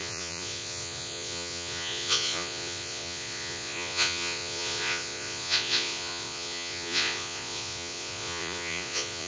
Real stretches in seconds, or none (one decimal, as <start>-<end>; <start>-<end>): none